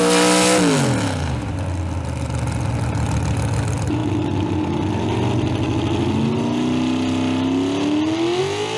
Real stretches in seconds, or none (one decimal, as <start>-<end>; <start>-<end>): 0.0-8.8

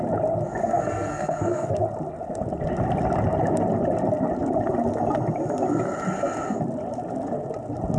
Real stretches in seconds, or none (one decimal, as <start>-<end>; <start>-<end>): 0.0-0.6; 1.8-8.0